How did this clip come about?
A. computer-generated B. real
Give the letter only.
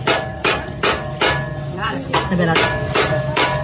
B